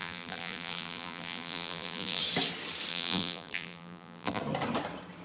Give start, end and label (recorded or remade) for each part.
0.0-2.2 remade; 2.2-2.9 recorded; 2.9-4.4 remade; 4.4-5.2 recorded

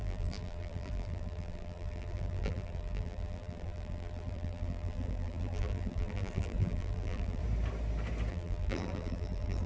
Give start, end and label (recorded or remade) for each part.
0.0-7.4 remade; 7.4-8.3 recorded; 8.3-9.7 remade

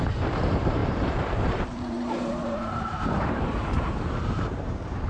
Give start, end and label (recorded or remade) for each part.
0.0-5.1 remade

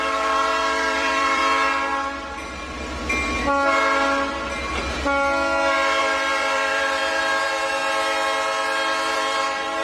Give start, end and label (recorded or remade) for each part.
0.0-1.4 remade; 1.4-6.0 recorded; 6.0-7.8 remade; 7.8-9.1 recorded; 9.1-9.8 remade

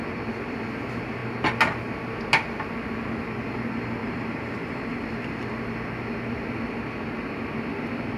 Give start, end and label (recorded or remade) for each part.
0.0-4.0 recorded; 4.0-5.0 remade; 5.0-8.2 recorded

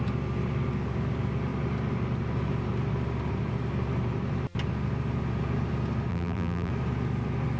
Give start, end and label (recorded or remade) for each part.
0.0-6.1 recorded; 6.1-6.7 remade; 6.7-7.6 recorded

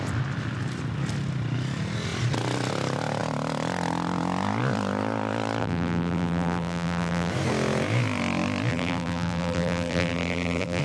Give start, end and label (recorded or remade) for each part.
0.0-5.6 recorded; 5.6-7.3 remade; 7.3-8.7 recorded; 8.7-10.8 remade

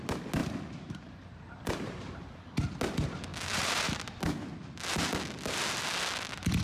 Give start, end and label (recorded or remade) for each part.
0.0-0.4 recorded; 0.4-2.3 remade; 2.3-3.3 recorded; 3.3-4.0 remade; 4.0-6.6 recorded